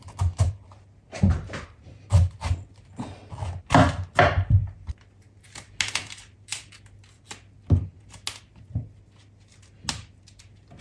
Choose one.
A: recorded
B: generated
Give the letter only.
A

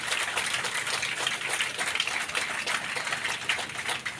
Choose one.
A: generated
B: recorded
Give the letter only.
B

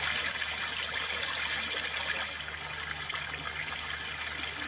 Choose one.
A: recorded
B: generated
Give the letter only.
A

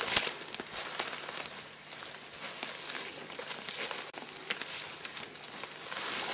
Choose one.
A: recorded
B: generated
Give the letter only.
A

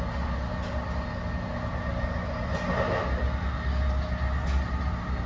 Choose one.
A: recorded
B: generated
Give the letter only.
A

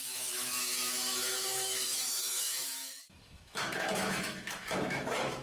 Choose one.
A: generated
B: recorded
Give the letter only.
A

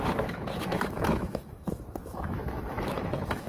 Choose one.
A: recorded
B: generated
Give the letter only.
B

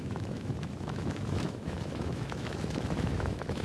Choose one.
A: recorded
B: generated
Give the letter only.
B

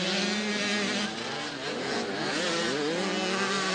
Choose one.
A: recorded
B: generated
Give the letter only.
A